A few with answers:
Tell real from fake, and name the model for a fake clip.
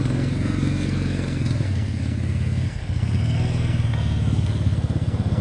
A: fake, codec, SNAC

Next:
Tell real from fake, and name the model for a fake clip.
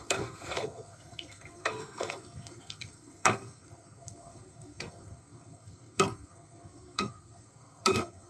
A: fake, codec, SNAC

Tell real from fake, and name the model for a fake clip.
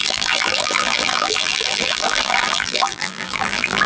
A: fake, vocoder, BigVGAN v2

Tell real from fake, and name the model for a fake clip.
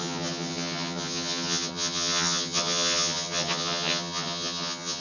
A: fake, vocoder, HiFi-GAN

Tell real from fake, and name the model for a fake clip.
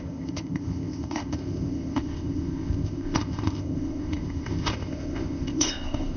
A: fake, codec, ZipCodec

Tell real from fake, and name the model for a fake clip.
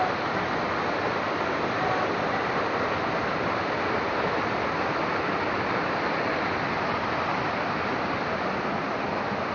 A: real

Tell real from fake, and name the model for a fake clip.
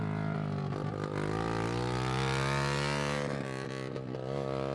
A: real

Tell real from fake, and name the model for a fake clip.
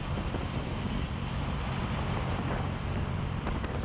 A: real